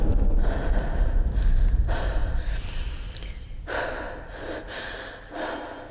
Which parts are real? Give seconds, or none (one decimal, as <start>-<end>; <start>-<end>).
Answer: 0.0-5.9

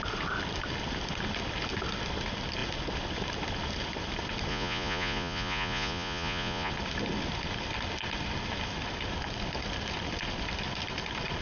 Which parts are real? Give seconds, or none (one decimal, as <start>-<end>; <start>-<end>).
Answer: 0.0-4.5; 6.7-11.4

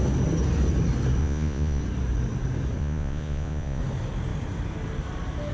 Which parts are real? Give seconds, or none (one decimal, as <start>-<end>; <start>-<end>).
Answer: 0.0-1.2; 1.8-2.8; 3.8-5.5

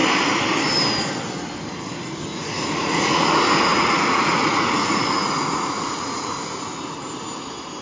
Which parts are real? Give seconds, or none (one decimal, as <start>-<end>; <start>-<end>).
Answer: 0.0-2.3; 3.2-3.7; 6.6-7.8

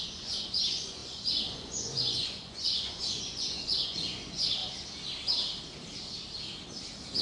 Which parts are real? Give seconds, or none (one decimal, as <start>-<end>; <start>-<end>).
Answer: 4.6-7.2

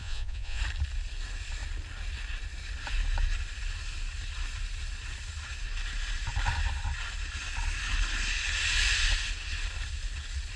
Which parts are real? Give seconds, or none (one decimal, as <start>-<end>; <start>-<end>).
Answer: 0.6-10.6

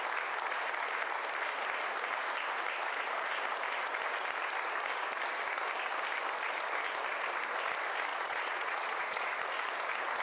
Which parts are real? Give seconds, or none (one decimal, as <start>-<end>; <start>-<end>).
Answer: 0.0-8.1; 9.3-10.2